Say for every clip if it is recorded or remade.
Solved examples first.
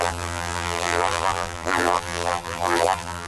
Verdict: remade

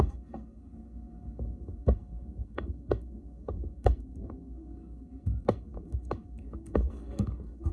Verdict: remade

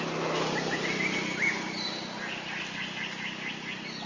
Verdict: recorded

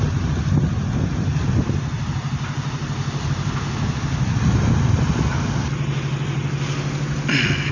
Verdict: recorded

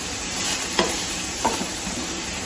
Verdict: remade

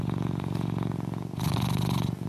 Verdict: recorded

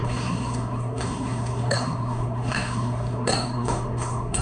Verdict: remade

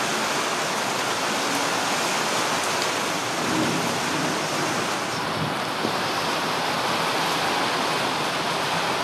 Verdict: recorded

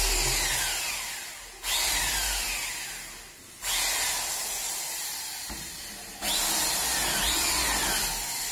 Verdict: recorded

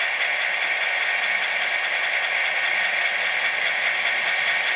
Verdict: recorded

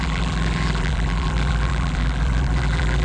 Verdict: remade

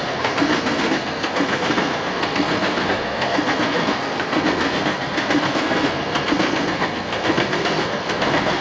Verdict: remade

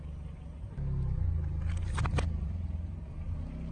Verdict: recorded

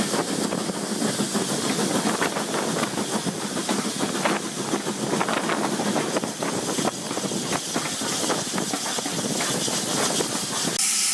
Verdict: recorded